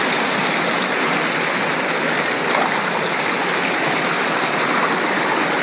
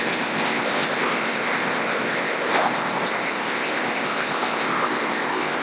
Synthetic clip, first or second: second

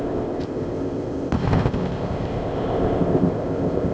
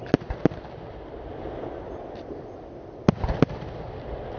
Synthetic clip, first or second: first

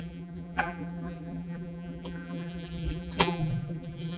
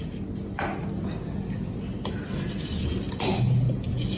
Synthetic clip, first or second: first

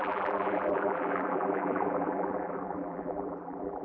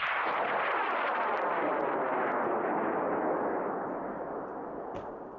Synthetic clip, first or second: first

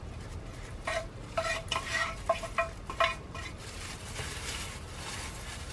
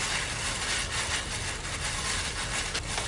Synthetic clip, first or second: first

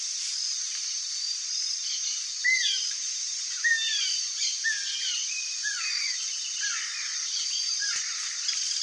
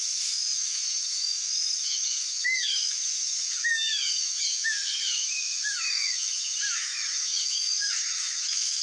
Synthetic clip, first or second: second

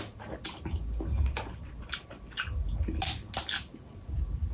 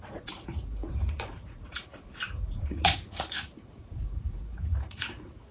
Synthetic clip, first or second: second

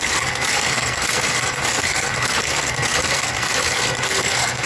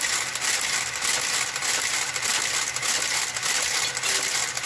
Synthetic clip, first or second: first